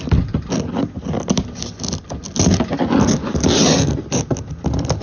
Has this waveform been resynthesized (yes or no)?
yes